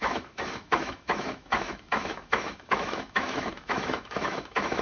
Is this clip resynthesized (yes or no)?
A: yes